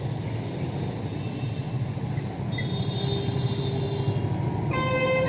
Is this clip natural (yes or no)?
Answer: yes